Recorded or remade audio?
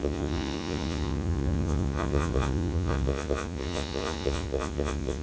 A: remade